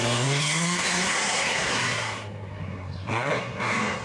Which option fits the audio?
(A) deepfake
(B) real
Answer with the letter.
A